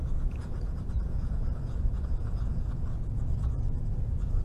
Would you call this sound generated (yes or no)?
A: yes